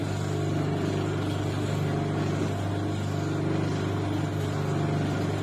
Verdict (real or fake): real